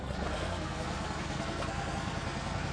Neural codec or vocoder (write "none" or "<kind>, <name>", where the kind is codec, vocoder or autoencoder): codec, SNAC